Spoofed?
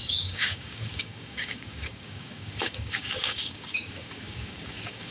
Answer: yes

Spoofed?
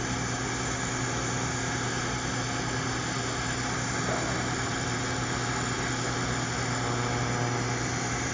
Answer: no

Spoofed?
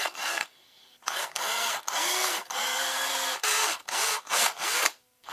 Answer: yes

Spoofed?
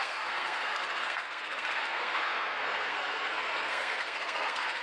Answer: yes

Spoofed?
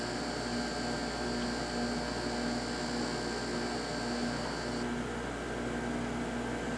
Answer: no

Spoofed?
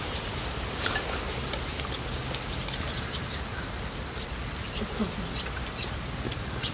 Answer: no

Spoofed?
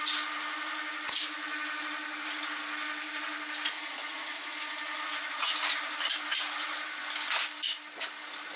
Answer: no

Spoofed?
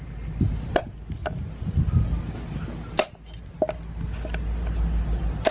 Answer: no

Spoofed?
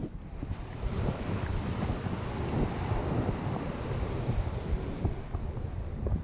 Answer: no